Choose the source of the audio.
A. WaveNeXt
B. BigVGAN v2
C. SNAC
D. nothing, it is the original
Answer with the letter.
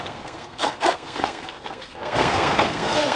C